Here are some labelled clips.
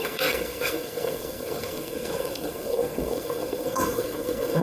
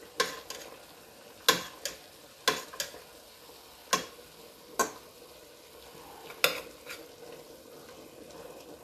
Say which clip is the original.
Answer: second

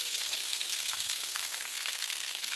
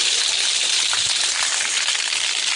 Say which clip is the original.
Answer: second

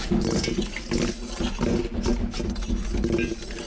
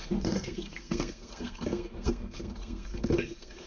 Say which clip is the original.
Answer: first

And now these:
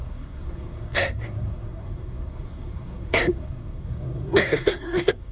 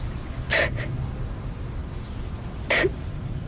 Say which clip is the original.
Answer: second